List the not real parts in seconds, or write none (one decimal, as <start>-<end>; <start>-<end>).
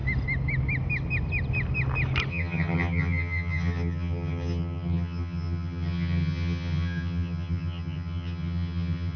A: 2.3-9.2